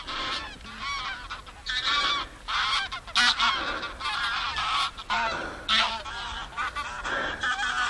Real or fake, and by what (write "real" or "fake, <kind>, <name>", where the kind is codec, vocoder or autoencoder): real